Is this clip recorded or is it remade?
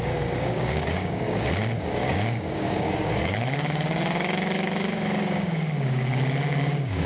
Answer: remade